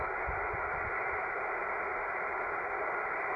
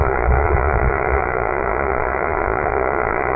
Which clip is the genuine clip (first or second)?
first